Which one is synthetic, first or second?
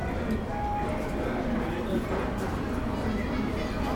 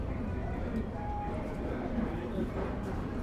second